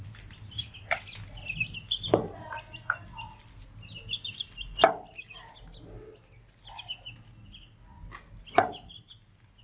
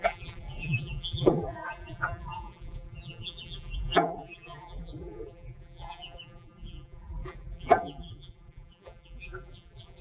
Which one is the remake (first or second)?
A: second